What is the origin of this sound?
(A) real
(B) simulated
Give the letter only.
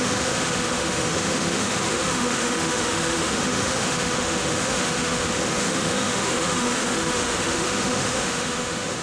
B